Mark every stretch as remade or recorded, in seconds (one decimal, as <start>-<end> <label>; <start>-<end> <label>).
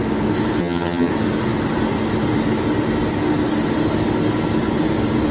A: 0.0-0.6 recorded; 0.6-1.1 remade; 1.1-5.3 recorded